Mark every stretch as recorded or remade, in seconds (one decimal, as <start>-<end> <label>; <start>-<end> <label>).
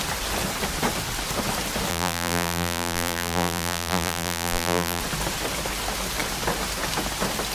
0.0-1.9 recorded; 1.9-5.0 remade; 5.0-7.5 recorded